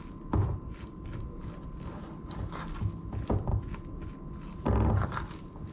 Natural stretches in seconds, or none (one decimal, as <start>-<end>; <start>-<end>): 0.0-5.7